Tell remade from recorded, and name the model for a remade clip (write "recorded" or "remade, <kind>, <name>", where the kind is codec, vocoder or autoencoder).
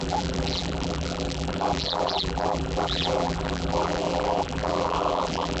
remade, vocoder, BigVGAN v2